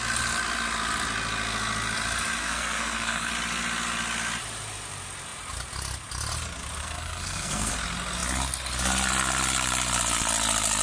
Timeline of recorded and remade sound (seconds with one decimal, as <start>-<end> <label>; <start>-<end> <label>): 0.0-2.4 recorded; 2.4-3.3 remade; 3.3-6.8 recorded; 6.8-7.7 remade; 7.7-10.8 recorded